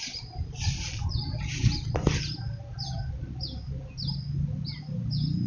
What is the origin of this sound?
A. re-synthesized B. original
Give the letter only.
B